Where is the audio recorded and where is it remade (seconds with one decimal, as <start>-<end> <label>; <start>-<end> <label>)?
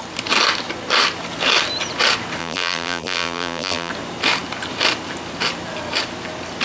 0.0-2.4 recorded; 2.4-3.9 remade; 3.9-6.6 recorded